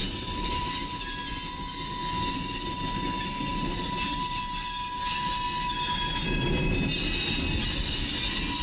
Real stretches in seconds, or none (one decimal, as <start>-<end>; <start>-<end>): 0.7-3.5; 4.4-8.6